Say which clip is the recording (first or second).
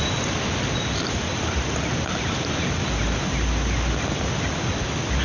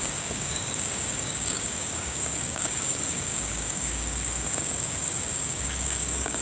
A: first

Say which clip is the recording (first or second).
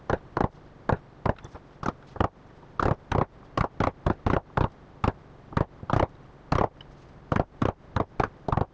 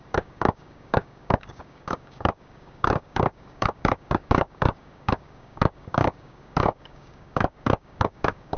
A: first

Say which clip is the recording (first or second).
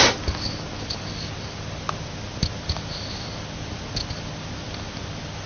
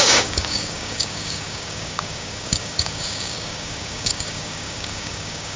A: first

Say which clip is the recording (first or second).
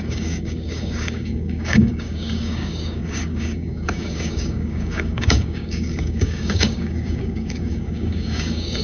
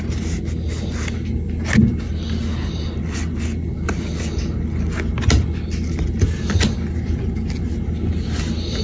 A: second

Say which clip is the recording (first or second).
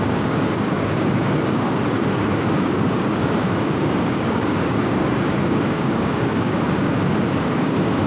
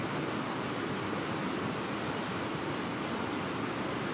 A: second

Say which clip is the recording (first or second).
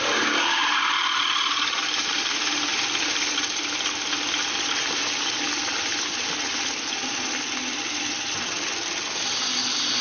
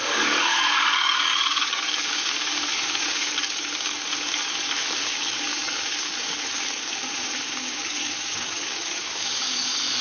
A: first